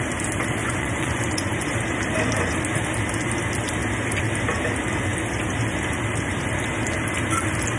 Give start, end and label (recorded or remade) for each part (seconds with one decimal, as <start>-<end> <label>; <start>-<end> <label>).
0.0-0.6 recorded; 0.6-1.5 remade; 1.5-7.8 recorded